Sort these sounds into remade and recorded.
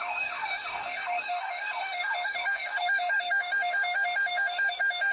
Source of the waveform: remade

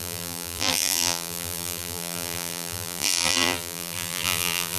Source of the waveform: remade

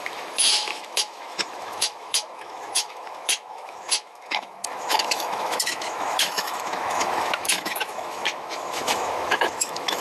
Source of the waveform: remade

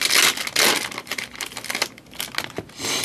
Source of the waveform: recorded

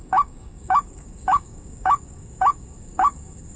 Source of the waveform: remade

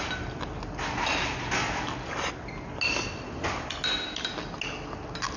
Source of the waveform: recorded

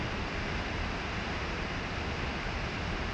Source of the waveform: recorded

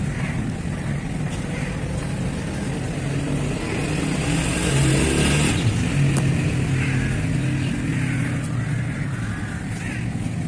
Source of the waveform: recorded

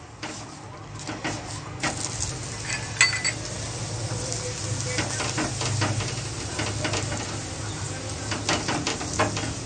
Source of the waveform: recorded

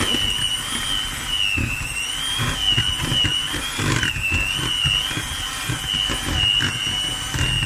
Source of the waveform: recorded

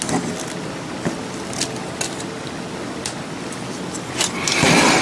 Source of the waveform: recorded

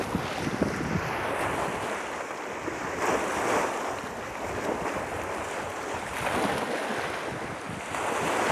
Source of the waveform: recorded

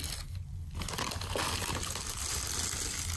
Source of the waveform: recorded